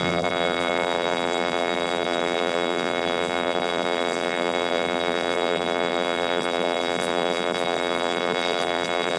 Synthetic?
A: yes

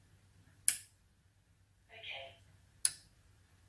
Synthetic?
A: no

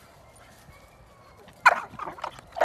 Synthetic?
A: no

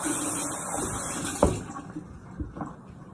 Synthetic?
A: yes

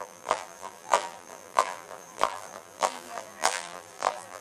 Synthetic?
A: yes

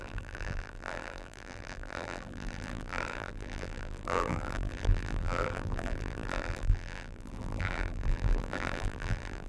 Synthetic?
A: yes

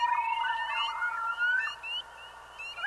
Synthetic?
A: no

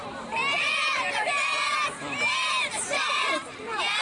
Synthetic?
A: yes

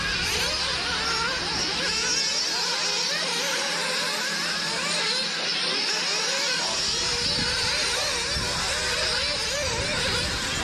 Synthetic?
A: no